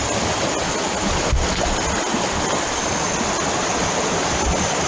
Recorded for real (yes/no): yes